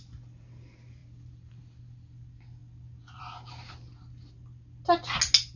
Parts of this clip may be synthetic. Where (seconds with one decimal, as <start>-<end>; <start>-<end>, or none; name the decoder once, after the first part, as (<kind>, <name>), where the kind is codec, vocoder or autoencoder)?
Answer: none